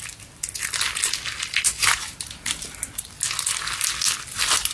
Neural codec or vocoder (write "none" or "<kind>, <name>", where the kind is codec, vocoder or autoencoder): none